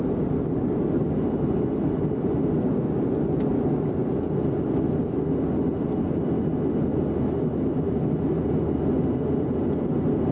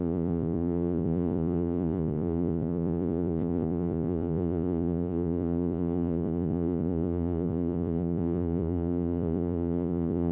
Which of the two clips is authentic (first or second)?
first